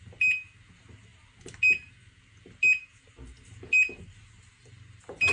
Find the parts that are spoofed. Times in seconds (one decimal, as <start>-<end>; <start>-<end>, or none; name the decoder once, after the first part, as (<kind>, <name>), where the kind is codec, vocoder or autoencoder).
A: none